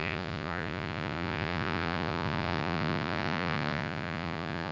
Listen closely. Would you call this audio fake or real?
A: fake